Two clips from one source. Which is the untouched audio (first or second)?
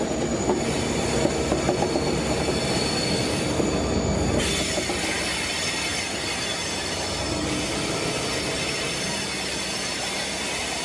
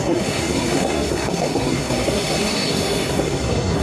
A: first